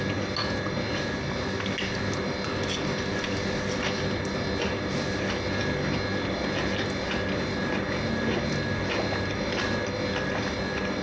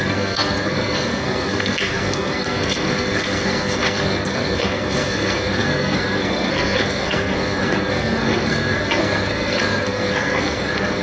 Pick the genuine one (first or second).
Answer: first